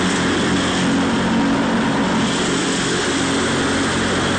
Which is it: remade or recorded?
recorded